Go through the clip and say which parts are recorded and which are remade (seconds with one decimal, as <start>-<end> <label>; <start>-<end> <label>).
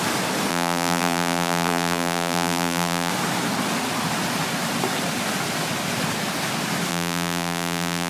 0.0-0.5 recorded; 0.5-3.1 remade; 3.1-6.9 recorded; 6.9-8.1 remade